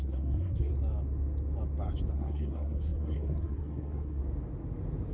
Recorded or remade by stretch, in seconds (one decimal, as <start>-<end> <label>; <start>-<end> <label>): 0.0-0.7 remade; 0.7-2.1 recorded; 2.1-4.2 remade; 4.2-5.1 recorded